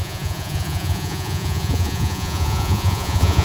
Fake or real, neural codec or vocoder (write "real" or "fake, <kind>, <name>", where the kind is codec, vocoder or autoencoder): fake, vocoder, Vocos